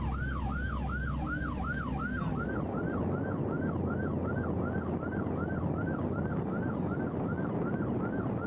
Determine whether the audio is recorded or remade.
recorded